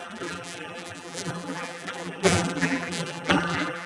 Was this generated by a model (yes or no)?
yes